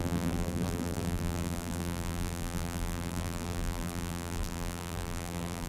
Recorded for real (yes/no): no